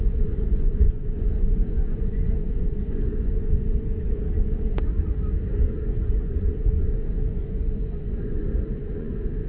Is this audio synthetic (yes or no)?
yes